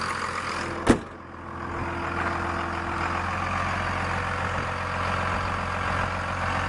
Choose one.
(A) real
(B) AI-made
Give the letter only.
A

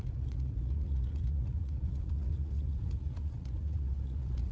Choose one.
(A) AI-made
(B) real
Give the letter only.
A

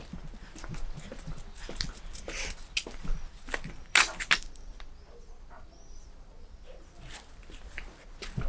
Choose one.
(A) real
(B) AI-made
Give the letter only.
A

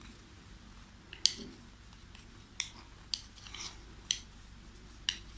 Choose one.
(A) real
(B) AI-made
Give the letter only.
A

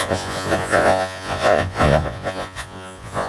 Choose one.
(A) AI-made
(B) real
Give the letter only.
A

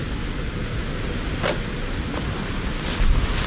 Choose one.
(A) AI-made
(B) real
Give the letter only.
B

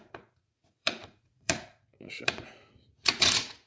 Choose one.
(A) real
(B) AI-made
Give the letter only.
B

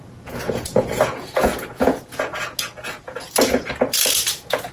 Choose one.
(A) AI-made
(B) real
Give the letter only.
A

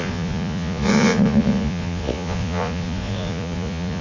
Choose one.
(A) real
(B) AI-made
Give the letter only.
B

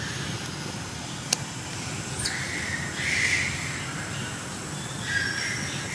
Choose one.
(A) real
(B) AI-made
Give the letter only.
A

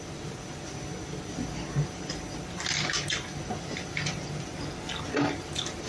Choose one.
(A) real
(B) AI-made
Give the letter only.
A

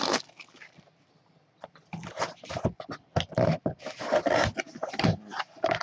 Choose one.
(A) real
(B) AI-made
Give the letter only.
A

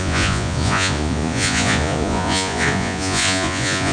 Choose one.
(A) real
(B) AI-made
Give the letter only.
B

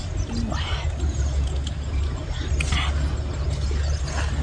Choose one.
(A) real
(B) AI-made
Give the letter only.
A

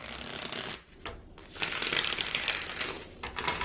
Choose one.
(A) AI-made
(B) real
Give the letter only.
B